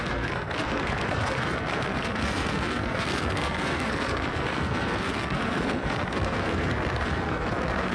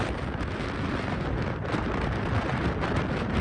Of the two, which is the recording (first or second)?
second